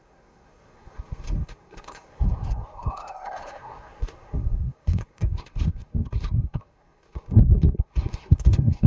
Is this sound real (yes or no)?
no